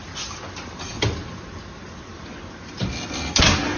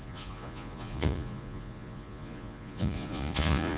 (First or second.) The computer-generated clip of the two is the second